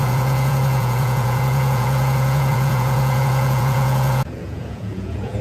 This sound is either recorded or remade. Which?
remade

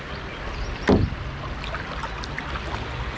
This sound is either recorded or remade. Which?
recorded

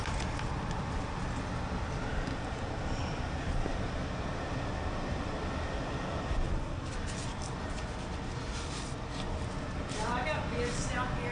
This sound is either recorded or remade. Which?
recorded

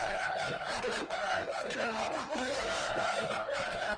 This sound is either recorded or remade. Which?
remade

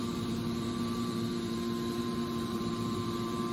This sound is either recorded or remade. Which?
remade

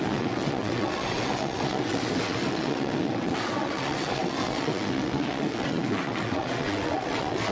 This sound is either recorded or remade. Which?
remade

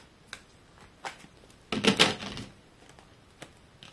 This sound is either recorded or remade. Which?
recorded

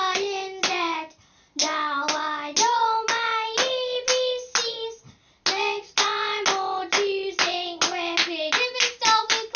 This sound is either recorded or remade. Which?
recorded